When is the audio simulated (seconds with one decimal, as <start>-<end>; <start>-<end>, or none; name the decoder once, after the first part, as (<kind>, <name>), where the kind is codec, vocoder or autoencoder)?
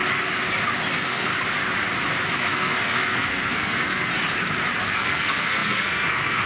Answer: 0.9-1.3 (codec, SNAC); 2.5-4.1; 4.8-6.5